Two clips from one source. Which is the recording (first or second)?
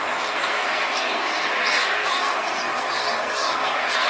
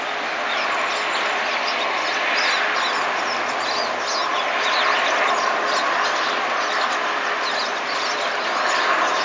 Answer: second